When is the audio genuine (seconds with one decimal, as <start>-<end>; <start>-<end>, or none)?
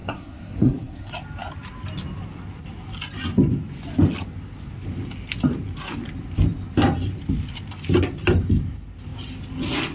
1.1-9.9